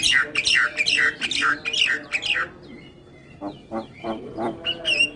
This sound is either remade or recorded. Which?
recorded